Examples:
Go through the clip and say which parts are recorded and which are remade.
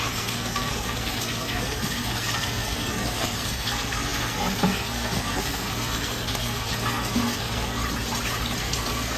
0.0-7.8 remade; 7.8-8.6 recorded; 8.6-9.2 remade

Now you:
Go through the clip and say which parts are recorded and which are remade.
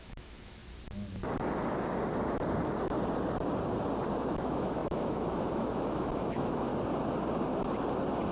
0.0-0.6 remade; 0.6-4.1 recorded; 4.1-6.7 remade; 6.7-8.3 recorded